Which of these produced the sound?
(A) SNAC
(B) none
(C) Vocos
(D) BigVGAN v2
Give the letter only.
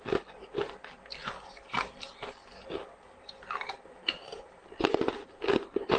B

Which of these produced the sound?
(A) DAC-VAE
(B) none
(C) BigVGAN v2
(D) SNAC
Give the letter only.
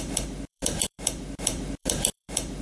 C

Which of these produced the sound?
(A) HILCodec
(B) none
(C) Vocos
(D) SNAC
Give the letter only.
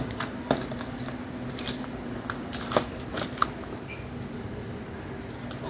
B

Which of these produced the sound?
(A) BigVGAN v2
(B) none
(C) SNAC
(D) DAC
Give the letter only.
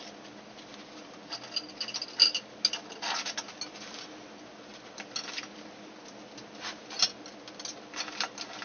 B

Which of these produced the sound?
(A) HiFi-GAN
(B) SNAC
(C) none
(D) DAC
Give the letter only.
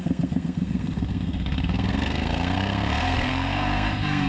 B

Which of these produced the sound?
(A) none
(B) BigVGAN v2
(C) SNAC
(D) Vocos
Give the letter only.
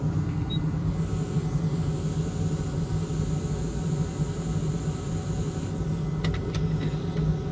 A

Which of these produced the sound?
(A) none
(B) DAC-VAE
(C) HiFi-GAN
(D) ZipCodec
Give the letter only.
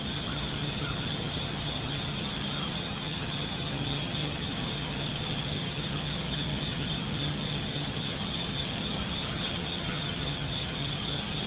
C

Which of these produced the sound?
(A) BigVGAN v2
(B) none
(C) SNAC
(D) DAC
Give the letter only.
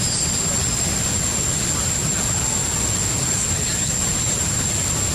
B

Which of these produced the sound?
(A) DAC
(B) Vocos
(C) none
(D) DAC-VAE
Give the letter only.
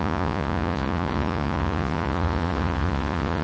B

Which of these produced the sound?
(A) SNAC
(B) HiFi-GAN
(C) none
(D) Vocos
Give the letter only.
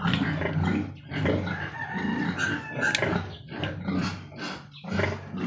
C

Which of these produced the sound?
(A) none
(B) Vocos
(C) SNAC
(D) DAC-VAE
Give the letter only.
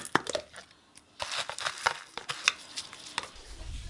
A